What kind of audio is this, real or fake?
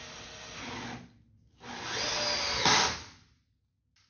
real